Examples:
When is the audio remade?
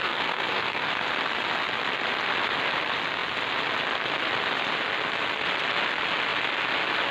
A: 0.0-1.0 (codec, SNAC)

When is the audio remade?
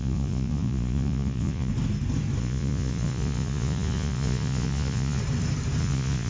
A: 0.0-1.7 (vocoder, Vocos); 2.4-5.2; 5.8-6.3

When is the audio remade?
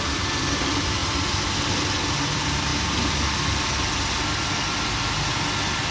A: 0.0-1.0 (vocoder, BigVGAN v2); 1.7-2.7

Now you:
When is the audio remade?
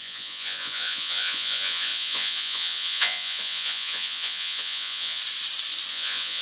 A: 0.0-5.2 (vocoder, Vocos); 5.9-6.4